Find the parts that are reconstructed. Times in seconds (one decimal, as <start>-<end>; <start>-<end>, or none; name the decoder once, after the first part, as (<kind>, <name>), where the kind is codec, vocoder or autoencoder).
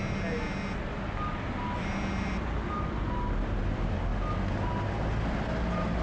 none